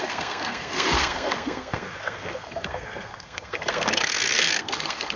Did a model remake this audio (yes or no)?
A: yes